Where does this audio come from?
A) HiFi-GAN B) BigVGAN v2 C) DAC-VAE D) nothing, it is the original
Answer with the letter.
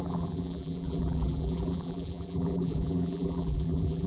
B